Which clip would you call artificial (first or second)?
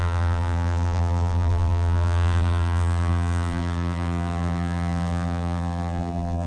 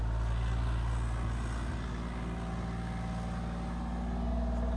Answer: first